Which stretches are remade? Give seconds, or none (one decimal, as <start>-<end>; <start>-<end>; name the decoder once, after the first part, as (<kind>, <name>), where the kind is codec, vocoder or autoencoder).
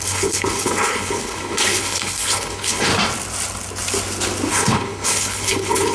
0.0-2.9 (codec, HILCodec); 4.5-5.9